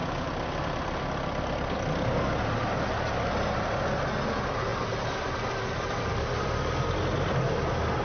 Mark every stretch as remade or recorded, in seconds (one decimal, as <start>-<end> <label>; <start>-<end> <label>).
0.0-8.0 recorded